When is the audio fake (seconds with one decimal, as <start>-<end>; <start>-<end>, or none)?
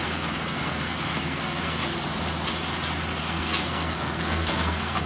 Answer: 0.0-1.8; 3.2-5.1